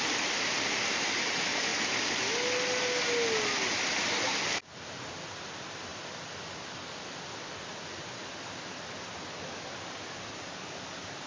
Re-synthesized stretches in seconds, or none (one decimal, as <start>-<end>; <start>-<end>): none